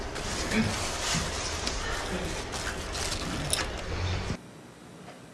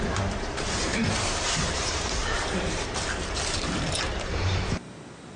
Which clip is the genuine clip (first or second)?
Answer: first